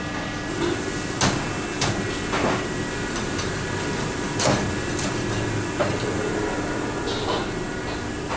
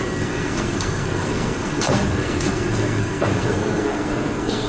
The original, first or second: first